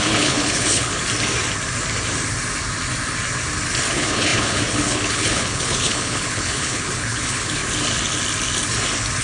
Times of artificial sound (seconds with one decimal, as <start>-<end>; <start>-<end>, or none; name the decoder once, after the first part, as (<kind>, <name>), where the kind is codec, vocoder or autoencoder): 0.0-0.9 (codec, HILCodec); 3.9-7.6